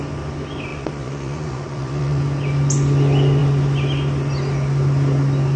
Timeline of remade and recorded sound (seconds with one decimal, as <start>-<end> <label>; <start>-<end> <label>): 0.0-0.7 recorded; 0.7-2.2 remade; 2.2-5.6 recorded